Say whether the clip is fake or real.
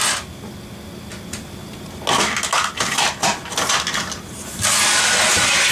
real